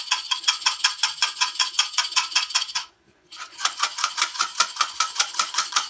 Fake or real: fake